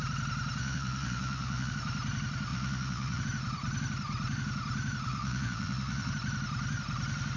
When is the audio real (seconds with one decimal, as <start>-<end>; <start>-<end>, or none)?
0.0-0.6; 1.7-2.5; 3.2-5.1; 6.1-7.4